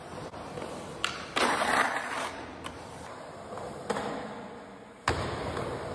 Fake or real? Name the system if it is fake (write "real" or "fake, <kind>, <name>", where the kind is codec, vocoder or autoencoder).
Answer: real